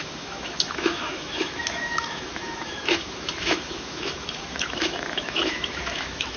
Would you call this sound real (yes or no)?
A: no